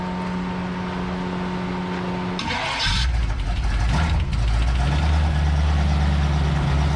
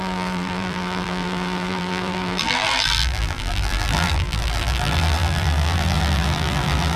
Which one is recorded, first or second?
first